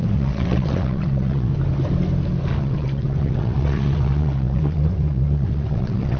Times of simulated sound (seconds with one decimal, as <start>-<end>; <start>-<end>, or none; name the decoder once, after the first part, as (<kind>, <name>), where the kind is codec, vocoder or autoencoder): 0.0-1.5 (vocoder, WaveNeXt); 2.6-6.2